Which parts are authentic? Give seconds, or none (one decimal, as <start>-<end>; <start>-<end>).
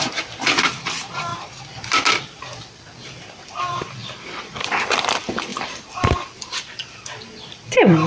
1.3-3.5